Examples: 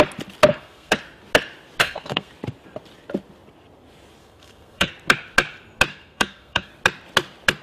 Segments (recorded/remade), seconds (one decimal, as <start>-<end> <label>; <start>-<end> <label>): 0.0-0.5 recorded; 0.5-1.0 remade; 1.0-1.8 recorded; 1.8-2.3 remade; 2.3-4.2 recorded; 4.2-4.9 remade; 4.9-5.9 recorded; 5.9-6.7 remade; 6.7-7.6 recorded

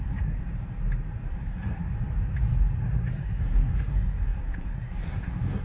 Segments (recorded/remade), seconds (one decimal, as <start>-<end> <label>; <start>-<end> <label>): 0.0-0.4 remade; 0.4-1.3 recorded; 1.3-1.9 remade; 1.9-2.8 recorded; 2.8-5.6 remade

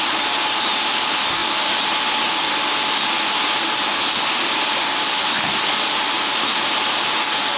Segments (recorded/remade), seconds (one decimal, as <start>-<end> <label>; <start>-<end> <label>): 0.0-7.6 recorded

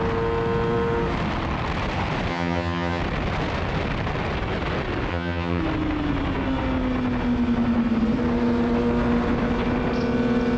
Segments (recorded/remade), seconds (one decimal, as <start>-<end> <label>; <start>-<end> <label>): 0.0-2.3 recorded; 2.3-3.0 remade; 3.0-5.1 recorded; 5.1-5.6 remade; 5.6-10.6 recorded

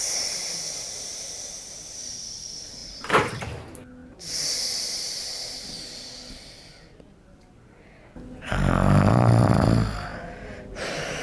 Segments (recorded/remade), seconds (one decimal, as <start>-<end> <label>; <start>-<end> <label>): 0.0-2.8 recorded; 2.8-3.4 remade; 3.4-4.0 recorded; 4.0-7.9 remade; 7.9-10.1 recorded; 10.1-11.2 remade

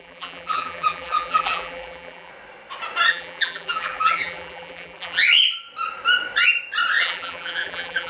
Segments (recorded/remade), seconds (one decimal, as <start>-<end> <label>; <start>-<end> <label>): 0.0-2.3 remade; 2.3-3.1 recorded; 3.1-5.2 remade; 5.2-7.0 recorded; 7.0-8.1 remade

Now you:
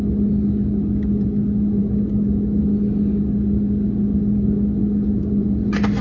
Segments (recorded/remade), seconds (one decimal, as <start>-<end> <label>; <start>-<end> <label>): 0.0-6.0 recorded

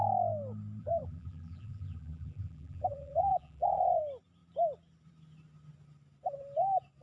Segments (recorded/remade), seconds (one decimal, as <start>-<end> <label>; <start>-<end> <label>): 0.0-0.8 recorded; 0.8-4.0 remade; 4.0-7.0 recorded